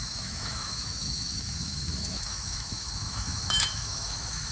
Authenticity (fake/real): fake